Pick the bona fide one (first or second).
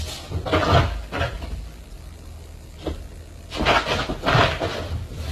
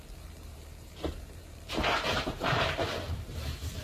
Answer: first